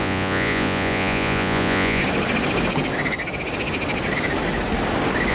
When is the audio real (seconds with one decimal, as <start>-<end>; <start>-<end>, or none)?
2.0-5.3